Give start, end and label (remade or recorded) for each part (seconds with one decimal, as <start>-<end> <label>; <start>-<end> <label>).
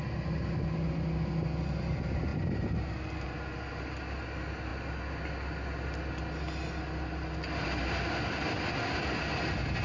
0.0-9.8 recorded